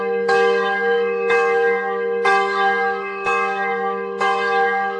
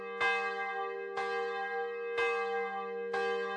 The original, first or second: second